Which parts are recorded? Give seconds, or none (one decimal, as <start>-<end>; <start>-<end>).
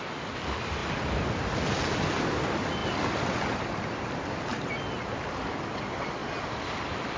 0.0-7.2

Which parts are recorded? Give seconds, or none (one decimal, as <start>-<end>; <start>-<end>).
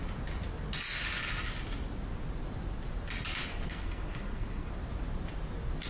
0.0-3.5; 4.7-5.9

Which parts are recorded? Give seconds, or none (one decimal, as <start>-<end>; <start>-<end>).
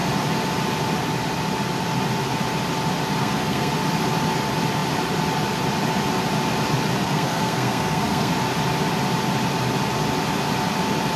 0.0-3.2; 3.7-7.0; 8.3-11.2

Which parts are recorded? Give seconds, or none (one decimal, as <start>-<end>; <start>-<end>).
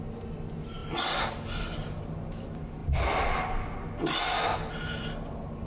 0.0-5.7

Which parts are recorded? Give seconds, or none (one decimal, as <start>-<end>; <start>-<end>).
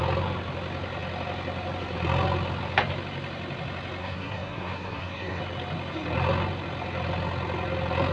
0.0-4.0; 5.4-8.1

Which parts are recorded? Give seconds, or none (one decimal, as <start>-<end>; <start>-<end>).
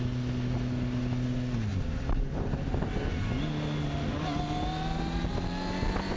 0.0-6.2